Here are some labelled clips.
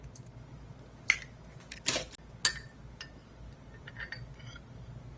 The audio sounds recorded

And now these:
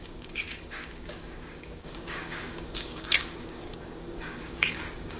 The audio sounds remade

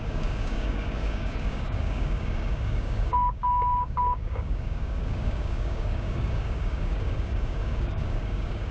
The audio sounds remade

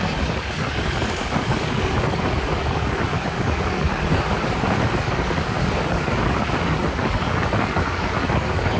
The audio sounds remade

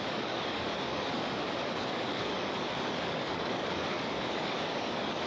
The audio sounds remade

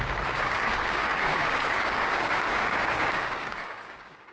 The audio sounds remade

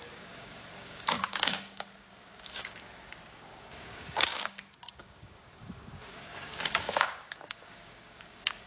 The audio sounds remade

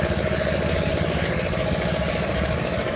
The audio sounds remade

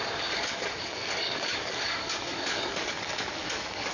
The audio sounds remade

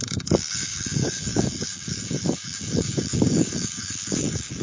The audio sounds remade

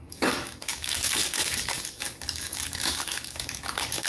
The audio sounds remade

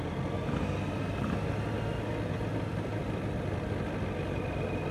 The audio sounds recorded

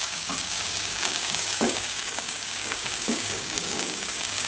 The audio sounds remade